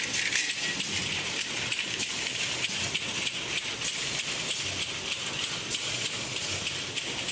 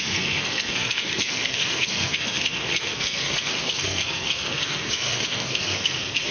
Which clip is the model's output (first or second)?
second